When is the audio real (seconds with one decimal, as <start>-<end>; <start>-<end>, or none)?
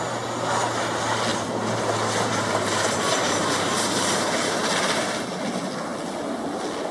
0.0-1.3; 5.3-6.9